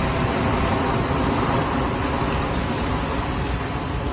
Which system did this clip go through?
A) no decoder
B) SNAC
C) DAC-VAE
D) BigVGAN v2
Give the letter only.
A